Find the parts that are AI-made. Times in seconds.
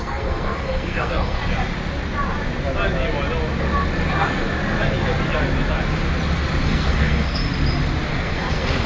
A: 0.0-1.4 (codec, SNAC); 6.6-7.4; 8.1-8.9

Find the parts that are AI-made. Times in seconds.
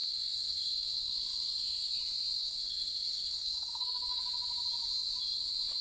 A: 0.0-2.0 (codec, SNAC); 2.4-4.2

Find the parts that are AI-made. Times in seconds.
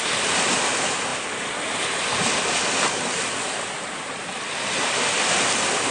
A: none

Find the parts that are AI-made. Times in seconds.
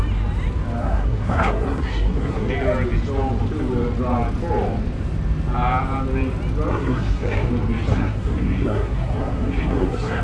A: 0.8-2.5 (codec, SNAC); 6.7-7.5; 7.9-10.2